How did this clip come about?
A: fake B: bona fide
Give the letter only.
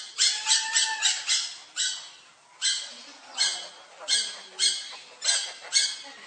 B